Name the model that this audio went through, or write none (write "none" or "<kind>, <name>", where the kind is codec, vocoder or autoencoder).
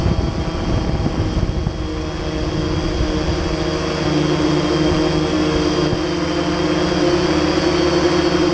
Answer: none